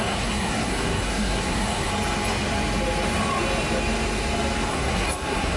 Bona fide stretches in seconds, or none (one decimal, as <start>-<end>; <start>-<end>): 1.9-4.7